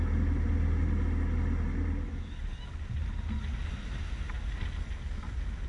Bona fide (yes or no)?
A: yes